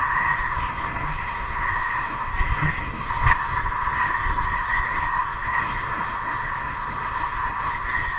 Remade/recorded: remade